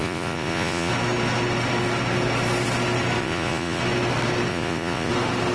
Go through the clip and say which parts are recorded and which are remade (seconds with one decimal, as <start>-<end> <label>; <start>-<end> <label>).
0.0-0.9 remade; 0.9-3.2 recorded; 3.2-3.8 remade; 3.8-4.5 recorded; 4.5-5.1 remade; 5.1-5.5 recorded